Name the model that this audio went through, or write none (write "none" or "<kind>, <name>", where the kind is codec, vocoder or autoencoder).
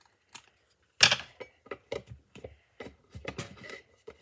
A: none